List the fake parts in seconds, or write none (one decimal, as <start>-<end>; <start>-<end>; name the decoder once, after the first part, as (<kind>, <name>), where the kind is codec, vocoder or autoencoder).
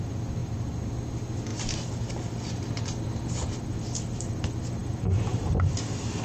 none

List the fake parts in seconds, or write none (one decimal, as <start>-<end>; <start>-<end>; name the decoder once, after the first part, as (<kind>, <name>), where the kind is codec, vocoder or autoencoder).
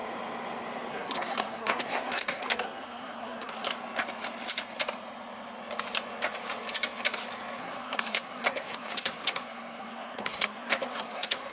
0.9-3.7 (codec, SNAC); 7.6-11.5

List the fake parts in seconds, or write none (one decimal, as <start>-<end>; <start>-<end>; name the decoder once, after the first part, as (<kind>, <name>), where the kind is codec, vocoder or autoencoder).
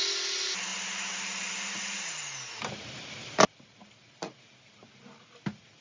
none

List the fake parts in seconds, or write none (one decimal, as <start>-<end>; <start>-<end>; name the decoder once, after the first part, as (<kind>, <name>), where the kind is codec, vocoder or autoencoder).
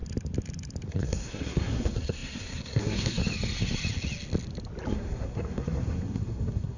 0.9-3.2 (codec, SNAC); 4.9-6.8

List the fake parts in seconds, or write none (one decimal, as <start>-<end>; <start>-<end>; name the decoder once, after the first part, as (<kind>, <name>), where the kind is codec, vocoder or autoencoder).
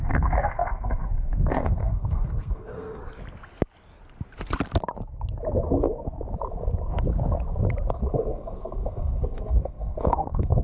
0.0-3.0 (codec, SNAC); 8.1-10.6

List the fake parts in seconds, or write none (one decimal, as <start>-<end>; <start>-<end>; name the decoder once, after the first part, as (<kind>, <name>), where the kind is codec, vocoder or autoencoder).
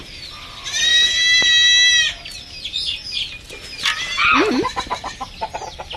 none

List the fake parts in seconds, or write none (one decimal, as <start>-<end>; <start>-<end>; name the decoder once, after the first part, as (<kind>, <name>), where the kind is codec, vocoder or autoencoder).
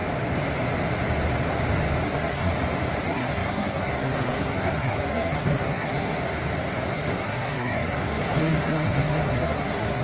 2.1-2.5 (codec, SNAC); 3.0-6.2; 6.9-10.0